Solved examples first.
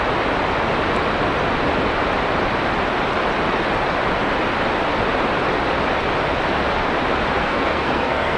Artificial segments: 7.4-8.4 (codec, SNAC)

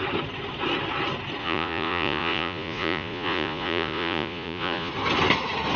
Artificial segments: 1.4-4.9 (vocoder, Vocos)

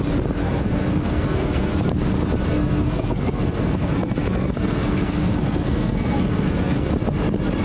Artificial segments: 0.4-1.7 (codec, SNAC); 2.5-6.9

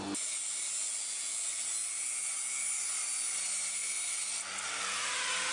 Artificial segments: none